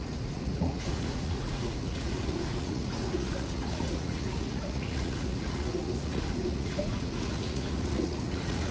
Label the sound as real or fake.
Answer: fake